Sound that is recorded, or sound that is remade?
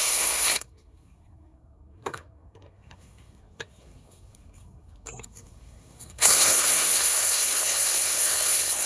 remade